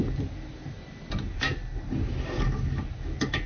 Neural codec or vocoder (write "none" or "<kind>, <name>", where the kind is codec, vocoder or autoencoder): none